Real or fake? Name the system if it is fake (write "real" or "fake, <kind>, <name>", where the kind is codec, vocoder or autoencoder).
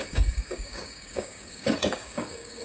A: fake, codec, DAC